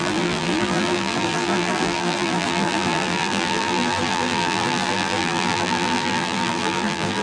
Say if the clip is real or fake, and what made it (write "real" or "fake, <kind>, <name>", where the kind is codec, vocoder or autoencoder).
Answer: fake, vocoder, BigVGAN v2